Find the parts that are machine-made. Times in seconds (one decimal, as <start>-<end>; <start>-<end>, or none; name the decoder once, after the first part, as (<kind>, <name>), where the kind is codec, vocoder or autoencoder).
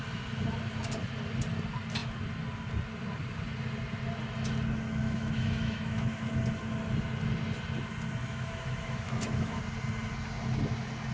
5.0-6.3 (autoencoder, DAC-VAE); 8.2-9.6